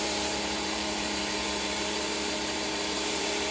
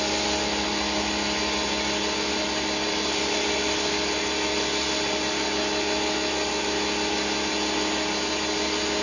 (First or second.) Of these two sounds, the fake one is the first